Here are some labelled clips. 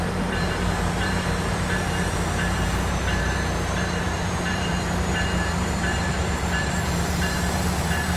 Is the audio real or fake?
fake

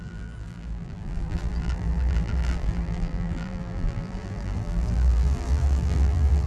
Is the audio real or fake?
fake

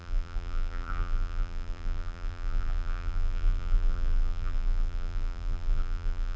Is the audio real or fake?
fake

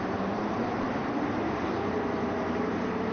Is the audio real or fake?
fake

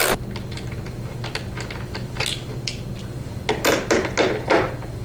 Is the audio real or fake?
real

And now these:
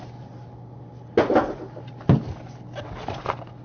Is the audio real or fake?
real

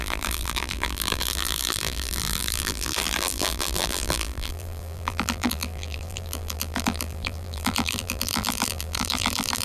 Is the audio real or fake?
fake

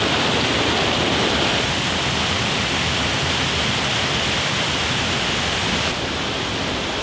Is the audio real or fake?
fake